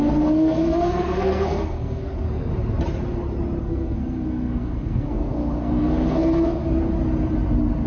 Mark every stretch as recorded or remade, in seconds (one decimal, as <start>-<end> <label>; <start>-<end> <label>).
0.0-2.5 remade; 2.5-3.6 recorded; 3.6-6.6 remade; 6.6-7.9 recorded